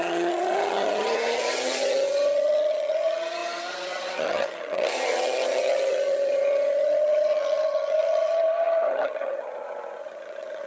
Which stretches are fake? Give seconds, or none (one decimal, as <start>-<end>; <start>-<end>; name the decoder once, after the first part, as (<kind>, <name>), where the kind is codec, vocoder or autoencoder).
0.0-10.7 (vocoder, HiFi-GAN)

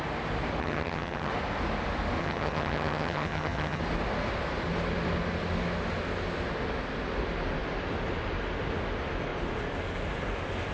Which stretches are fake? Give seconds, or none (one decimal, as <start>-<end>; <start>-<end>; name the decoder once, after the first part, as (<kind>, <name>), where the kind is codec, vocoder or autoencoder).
0.6-1.3 (vocoder, HiFi-GAN); 2.2-3.8